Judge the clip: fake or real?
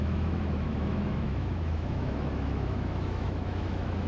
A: fake